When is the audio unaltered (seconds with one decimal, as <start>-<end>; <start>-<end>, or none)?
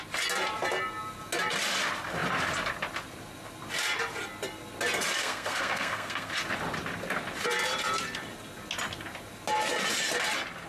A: 0.0-5.2; 6.3-10.7